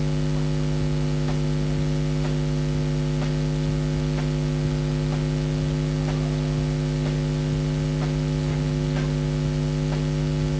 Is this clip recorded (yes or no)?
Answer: yes